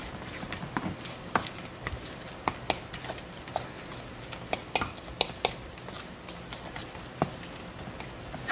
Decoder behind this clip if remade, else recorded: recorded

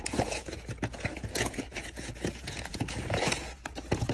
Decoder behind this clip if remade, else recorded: remade, vocoder, Vocos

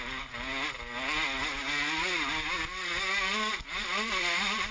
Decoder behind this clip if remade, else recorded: recorded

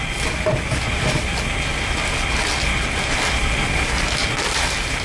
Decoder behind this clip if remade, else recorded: recorded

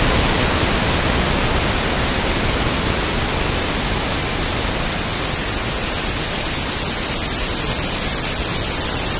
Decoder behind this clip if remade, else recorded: recorded